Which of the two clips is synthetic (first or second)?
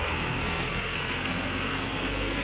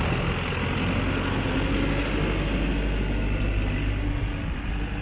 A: first